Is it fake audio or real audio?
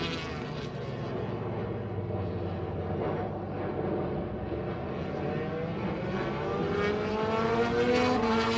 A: real